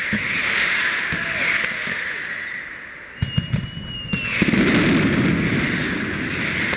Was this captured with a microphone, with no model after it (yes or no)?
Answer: yes